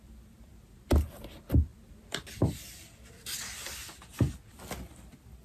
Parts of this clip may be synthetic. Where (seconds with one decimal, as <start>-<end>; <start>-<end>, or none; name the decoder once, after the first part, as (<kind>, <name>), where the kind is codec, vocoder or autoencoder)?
none